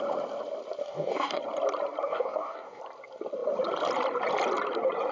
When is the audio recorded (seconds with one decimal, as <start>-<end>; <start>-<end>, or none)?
0.0-0.8; 1.4-2.1; 2.8-5.1